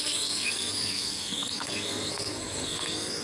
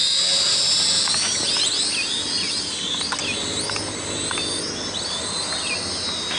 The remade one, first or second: first